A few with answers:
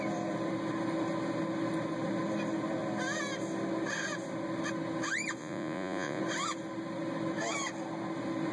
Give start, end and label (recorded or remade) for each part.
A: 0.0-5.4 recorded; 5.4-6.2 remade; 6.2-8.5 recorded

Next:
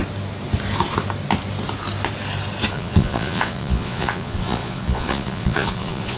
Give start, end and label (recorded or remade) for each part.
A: 0.0-2.7 recorded; 2.7-6.2 remade